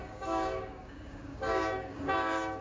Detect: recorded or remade remade